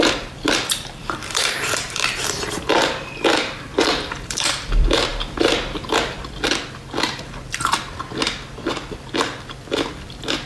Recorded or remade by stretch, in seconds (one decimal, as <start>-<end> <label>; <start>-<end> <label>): 0.0-2.7 remade; 2.7-3.4 recorded; 3.4-5.1 remade; 5.1-9.6 recorded; 9.6-10.5 remade